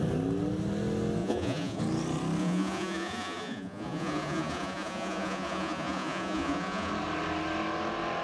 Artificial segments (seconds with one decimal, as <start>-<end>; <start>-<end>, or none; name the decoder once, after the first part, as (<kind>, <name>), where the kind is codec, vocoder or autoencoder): 1.2-1.8 (vocoder, Vocos); 2.4-6.9